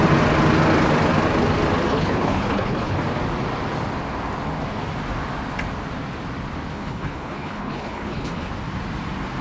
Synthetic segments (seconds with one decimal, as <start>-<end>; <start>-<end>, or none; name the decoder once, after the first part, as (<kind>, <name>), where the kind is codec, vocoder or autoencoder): 1.9-3.0 (codec, HILCodec); 6.7-8.5